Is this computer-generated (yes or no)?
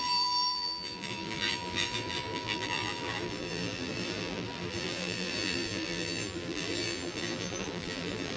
yes